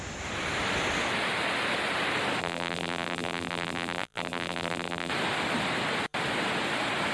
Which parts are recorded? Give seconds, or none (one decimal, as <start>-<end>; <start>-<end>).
0.0-2.4; 5.1-7.1

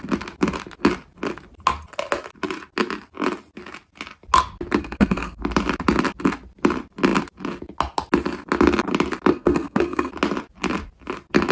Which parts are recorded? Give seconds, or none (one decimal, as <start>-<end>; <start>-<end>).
0.0-4.8; 5.4-9.3; 10.1-11.5